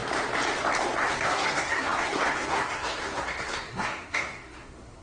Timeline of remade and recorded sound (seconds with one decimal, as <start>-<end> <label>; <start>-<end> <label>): 0.0-1.1 recorded; 1.1-5.0 remade